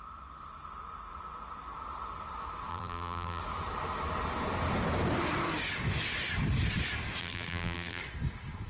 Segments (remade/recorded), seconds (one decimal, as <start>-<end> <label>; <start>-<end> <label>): 0.0-2.7 recorded; 2.7-3.4 remade; 3.4-7.2 recorded; 7.2-8.0 remade; 8.0-8.7 recorded